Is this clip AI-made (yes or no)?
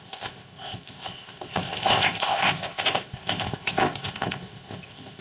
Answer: yes